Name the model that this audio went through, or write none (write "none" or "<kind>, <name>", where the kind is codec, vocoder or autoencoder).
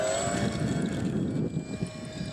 none